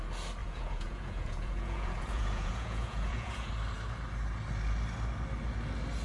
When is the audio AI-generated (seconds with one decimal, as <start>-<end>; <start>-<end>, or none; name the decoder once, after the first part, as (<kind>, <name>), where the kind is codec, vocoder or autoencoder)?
0.4-3.5 (vocoder, Vocos)